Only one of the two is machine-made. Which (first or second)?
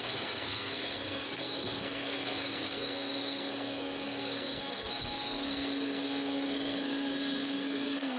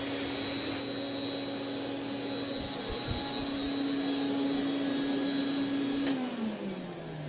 first